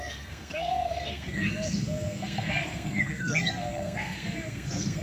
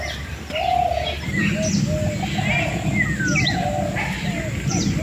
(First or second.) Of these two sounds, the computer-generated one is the first